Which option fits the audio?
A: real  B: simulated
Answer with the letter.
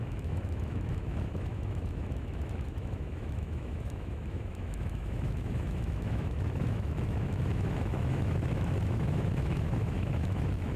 B